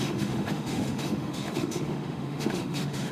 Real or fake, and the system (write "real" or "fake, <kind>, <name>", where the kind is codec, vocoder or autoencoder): fake, autoencoder, DAC-VAE